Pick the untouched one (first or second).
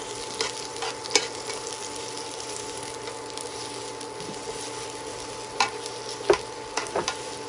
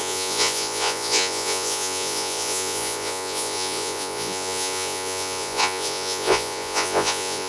first